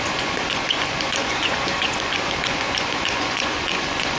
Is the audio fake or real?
fake